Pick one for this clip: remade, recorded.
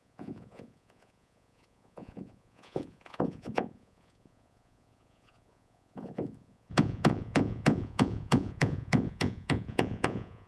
remade